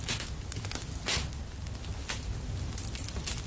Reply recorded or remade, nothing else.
recorded